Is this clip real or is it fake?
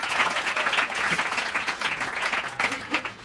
fake